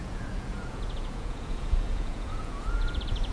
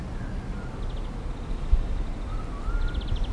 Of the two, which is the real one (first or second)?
second